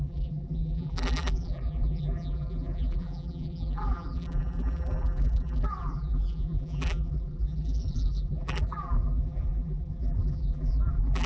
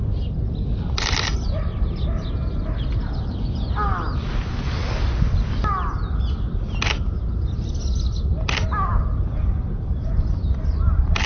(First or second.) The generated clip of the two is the first